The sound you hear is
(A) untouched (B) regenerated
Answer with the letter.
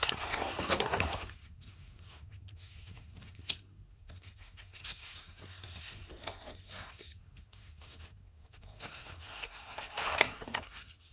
B